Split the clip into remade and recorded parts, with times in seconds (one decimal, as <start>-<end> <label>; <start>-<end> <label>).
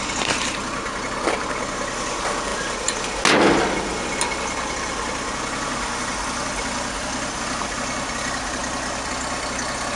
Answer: 0.0-10.0 recorded